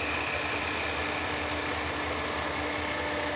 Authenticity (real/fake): real